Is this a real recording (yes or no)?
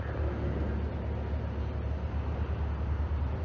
yes